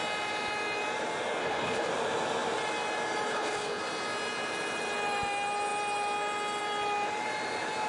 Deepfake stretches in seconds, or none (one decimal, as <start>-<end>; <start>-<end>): 1.4-1.9; 3.3-3.8